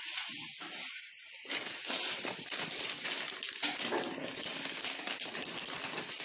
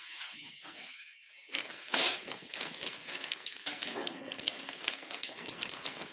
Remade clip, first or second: second